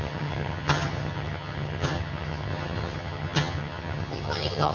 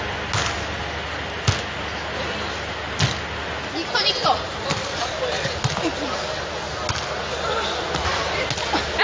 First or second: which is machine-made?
first